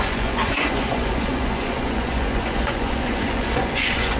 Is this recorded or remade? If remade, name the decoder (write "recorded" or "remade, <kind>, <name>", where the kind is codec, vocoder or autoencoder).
remade, vocoder, Vocos